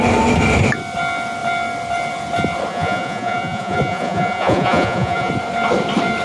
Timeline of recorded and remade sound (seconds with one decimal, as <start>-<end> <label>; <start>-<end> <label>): 0.0-2.7 recorded; 2.7-5.3 remade; 5.3-6.2 recorded